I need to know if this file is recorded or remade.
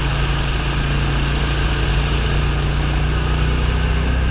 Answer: recorded